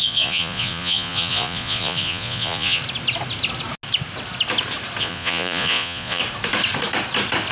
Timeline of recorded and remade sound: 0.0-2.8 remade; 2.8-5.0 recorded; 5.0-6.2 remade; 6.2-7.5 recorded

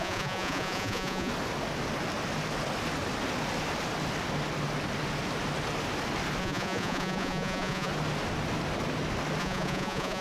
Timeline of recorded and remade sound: 0.0-1.3 remade; 1.3-6.4 recorded; 6.4-7.9 remade; 7.9-9.4 recorded; 9.4-10.2 remade

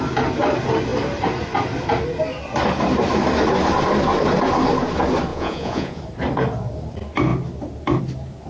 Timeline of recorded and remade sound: 0.0-5.3 recorded; 5.3-6.0 remade; 6.0-8.5 recorded

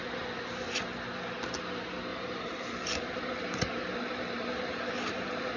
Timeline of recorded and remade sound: 0.0-2.1 recorded; 2.1-5.6 remade

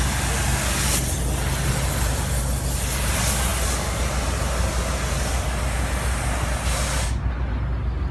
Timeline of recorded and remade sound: 0.0-8.1 recorded

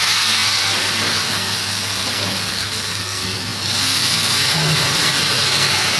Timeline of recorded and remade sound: 0.0-6.0 remade

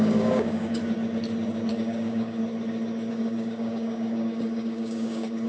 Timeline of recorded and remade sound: 0.0-0.8 remade; 0.8-1.7 recorded; 1.7-2.4 remade; 2.4-3.1 recorded; 3.1-5.5 remade

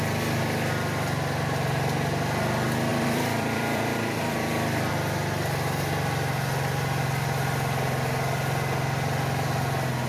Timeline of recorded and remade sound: 0.0-2.9 recorded; 2.9-4.9 remade; 4.9-10.1 recorded